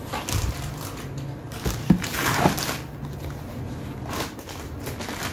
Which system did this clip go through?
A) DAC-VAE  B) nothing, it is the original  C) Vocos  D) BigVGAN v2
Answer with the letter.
B